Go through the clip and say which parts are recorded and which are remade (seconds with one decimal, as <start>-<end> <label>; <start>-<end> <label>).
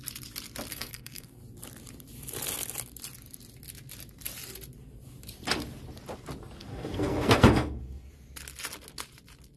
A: 0.0-0.7 recorded; 0.7-1.4 remade; 1.4-6.6 recorded; 6.6-8.1 remade; 8.1-9.6 recorded